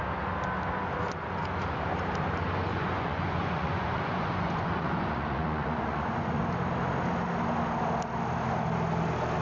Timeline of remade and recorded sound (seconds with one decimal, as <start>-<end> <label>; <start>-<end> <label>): 0.0-2.7 recorded; 2.7-6.4 remade; 6.4-9.4 recorded